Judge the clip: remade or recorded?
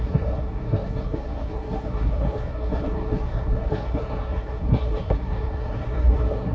remade